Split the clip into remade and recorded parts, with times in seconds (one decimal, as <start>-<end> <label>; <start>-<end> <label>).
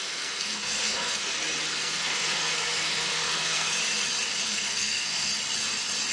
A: 0.0-1.2 remade; 1.2-1.8 recorded; 1.8-3.8 remade; 3.8-4.4 recorded; 4.4-5.3 remade; 5.3-6.1 recorded